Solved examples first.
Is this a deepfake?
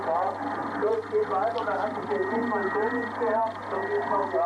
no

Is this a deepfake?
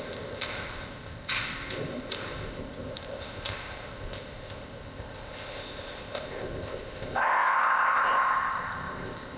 yes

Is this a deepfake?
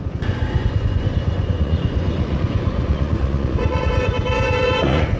yes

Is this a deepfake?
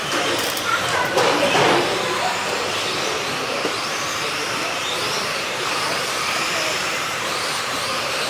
yes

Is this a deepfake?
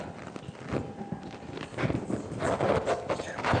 yes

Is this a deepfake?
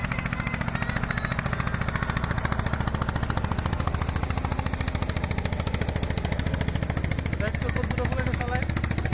no